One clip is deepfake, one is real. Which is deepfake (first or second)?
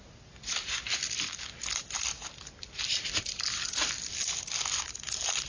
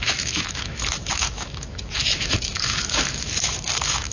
second